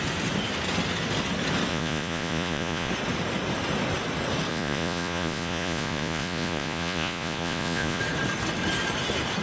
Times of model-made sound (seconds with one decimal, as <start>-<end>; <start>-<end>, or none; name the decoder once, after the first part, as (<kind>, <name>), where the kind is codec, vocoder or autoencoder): 1.7-2.9 (vocoder, Vocos); 4.5-8.0